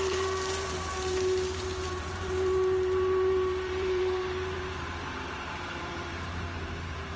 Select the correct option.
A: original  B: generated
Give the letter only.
B